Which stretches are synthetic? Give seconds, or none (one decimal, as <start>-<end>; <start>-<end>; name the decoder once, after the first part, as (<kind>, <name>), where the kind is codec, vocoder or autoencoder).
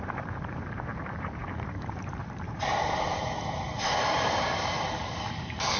0.0-5.8 (vocoder, BigVGAN v2)